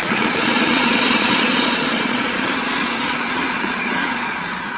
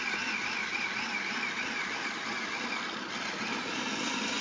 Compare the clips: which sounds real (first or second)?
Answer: second